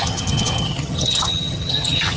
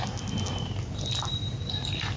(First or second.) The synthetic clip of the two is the first